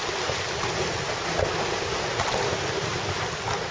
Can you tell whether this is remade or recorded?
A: recorded